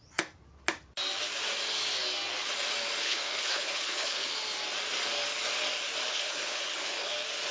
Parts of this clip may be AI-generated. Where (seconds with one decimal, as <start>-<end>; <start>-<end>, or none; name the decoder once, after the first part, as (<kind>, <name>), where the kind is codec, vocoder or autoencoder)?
3.0-4.3 (codec, HILCodec); 6.1-7.1